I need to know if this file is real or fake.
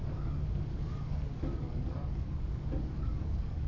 fake